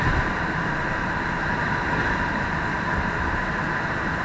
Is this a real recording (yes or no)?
no